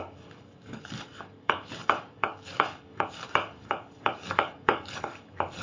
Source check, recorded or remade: remade